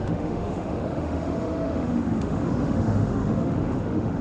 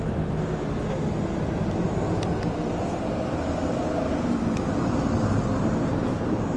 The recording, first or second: second